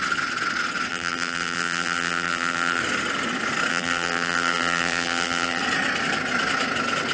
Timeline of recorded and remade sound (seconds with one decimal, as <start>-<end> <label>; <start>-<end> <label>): 0.0-0.9 recorded; 0.9-2.8 remade; 2.8-3.7 recorded; 3.7-5.6 remade; 5.6-7.1 recorded